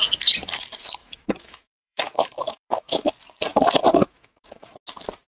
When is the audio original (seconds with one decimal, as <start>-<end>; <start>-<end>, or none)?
0.0-1.0; 3.1-4.0; 4.7-5.4

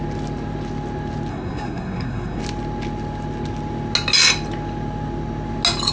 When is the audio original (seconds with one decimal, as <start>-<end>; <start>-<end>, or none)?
0.0-1.3; 2.4-5.9

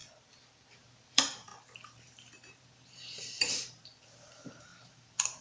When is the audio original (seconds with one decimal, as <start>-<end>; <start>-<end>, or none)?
0.0-0.7

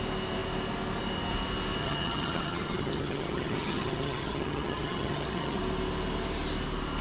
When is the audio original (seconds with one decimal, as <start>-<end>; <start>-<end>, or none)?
0.0-1.8; 5.6-7.0

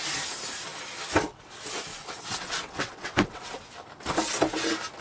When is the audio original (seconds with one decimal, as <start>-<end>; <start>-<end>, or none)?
0.0-1.9; 3.5-5.0

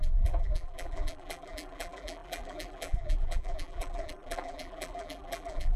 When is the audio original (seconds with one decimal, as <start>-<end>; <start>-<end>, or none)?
none

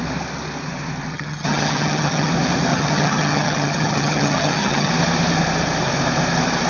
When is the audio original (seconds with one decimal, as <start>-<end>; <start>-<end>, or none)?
0.0-1.1; 2.3-2.7; 4.9-6.7

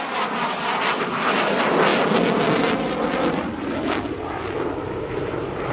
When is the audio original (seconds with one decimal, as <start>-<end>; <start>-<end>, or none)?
0.0-5.7